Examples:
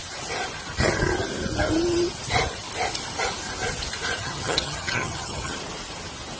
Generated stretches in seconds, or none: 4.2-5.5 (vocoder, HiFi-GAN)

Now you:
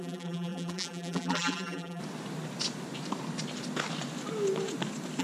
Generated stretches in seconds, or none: 0.0-2.0 (vocoder, BigVGAN v2)

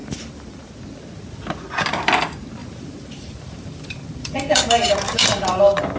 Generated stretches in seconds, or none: 0.0-0.7 (vocoder, BigVGAN v2); 2.6-5.6

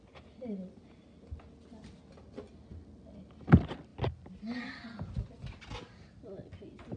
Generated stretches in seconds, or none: none

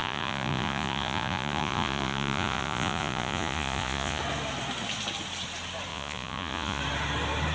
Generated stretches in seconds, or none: 0.0-4.2 (vocoder, Vocos); 5.9-6.8

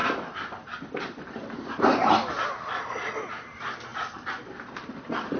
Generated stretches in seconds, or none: 2.9-3.9 (vocoder, BigVGAN v2); 4.9-5.4

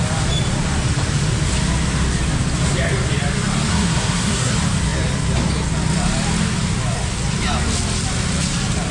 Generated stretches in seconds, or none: 3.7-4.5 (codec, SNAC)

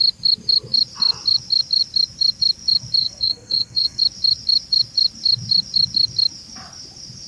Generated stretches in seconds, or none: 3.0-4.0 (codec, SNAC)